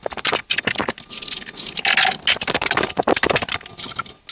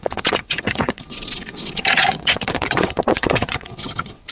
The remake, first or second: second